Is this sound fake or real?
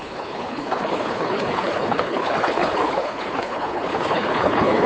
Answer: fake